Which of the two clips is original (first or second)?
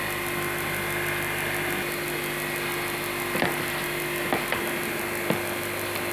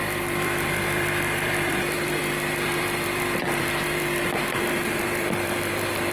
first